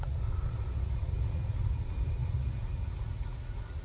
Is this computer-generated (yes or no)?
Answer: yes